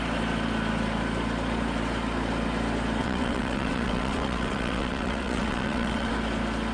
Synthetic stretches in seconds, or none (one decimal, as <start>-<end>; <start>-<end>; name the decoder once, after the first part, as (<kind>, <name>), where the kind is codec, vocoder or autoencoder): 3.0-6.1 (vocoder, WaveNeXt)